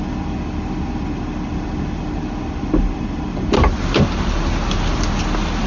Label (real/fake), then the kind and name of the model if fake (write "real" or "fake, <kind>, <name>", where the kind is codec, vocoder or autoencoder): real